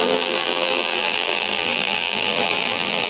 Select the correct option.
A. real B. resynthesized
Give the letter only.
B